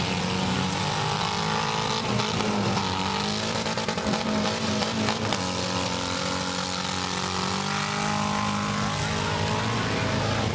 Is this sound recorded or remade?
recorded